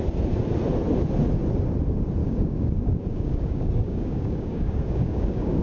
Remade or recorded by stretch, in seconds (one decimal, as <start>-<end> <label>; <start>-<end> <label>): 0.0-2.2 recorded; 2.2-5.6 remade